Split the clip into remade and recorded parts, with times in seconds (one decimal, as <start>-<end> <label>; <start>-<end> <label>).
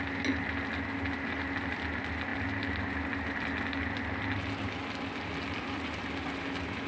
0.0-6.9 recorded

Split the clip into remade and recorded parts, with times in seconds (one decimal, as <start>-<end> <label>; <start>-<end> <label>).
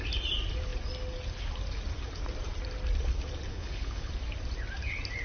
0.0-3.5 recorded; 3.5-4.1 remade; 4.1-5.2 recorded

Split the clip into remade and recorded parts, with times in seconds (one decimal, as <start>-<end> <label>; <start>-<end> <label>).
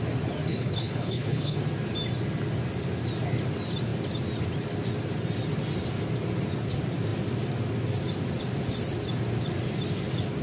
0.0-0.5 recorded; 0.5-1.6 remade; 1.6-10.4 recorded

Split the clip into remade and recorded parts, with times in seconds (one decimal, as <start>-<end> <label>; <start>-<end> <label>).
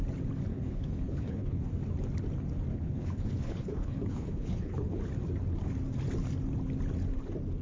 0.0-0.5 recorded; 0.5-1.7 remade; 1.7-2.7 recorded; 2.7-5.0 remade; 5.0-7.6 recorded